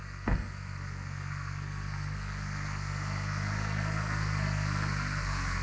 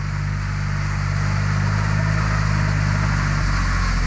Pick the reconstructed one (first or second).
first